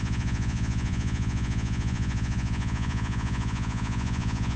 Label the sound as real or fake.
fake